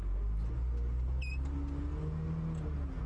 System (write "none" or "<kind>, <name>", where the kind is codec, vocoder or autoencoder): none